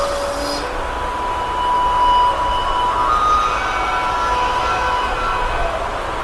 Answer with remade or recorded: recorded